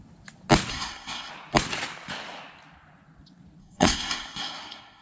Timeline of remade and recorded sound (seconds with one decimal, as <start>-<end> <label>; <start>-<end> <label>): 0.0-0.7 recorded; 0.7-1.3 remade; 1.3-3.6 recorded; 3.6-5.0 remade